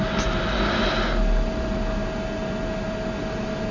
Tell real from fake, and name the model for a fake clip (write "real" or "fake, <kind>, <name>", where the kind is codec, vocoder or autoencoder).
real